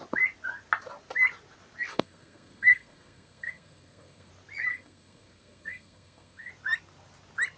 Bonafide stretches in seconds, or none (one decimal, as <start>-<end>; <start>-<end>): 0.0-1.9; 4.3-4.7; 6.5-7.6